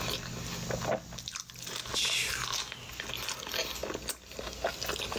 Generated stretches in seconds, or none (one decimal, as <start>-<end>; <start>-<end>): none